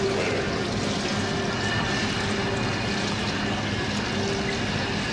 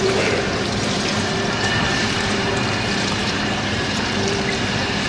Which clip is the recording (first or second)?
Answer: first